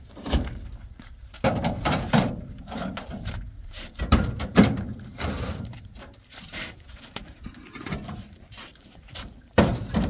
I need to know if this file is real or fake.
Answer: fake